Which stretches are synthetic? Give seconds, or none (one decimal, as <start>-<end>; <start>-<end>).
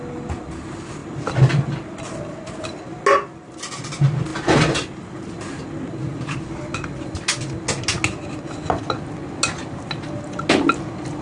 none